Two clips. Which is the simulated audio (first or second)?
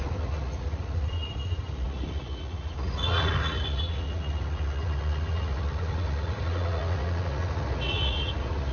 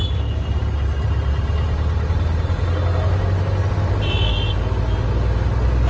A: first